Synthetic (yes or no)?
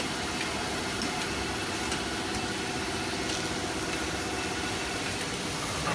no